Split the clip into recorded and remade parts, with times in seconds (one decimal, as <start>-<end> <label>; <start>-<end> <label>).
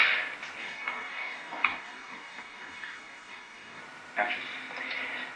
0.0-0.6 recorded; 0.6-3.8 remade; 3.8-5.4 recorded